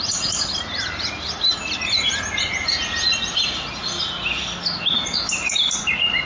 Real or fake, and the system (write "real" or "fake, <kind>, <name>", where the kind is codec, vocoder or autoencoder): real